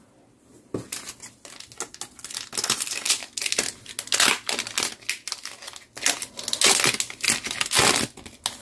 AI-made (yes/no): no